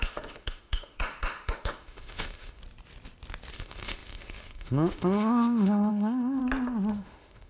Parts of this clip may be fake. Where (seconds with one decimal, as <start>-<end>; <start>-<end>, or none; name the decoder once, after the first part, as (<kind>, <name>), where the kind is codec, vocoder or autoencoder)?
0.0-2.6 (autoencoder, DAC-VAE); 3.5-6.4; 6.9-7.5